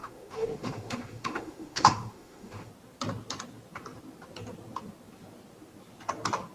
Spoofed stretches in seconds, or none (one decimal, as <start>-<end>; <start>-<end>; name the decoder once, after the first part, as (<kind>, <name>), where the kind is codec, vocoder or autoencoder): 0.0-2.7 (autoencoder, DAC-VAE)